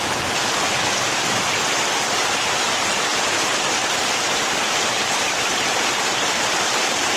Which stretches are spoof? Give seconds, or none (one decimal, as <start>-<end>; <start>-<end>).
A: 3.8-5.4